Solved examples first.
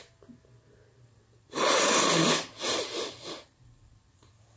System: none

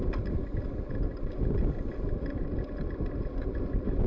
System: none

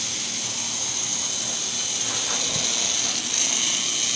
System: none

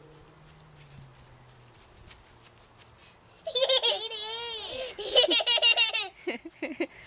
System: none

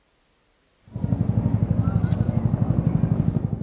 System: none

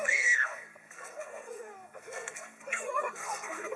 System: codec, SNAC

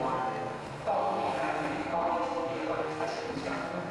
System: codec, SNAC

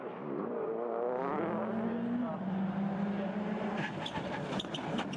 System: none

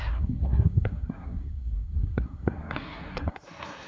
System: codec, SNAC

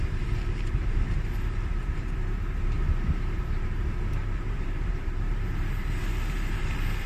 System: vocoder, BigVGAN v2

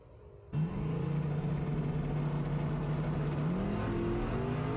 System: none